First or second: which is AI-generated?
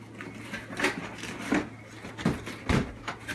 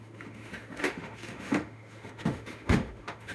second